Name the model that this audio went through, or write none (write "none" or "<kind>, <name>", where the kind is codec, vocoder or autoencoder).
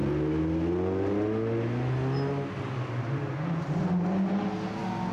none